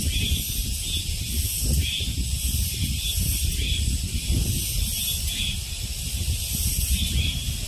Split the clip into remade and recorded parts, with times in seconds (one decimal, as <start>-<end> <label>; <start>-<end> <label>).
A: 0.0-3.1 recorded; 3.1-4.5 remade; 4.5-7.7 recorded